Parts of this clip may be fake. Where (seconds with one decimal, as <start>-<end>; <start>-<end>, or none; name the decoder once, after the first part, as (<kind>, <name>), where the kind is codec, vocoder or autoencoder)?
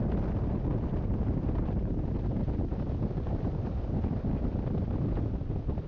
0.9-4.1 (vocoder, BigVGAN v2)